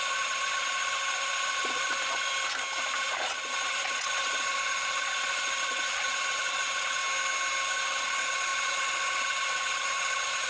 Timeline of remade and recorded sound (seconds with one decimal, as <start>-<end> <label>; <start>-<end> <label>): 0.0-2.3 remade; 2.3-3.0 recorded; 3.0-7.0 remade; 7.0-8.0 recorded; 8.0-10.5 remade